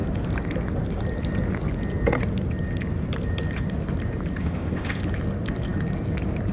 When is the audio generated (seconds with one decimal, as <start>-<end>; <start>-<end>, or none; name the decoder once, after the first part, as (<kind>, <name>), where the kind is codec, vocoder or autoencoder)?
4.4-5.0 (codec, ZipCodec)